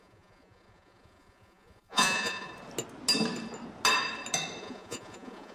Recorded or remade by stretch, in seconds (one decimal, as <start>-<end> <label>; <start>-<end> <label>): 0.0-2.5 remade; 2.5-4.6 recorded; 4.6-5.5 remade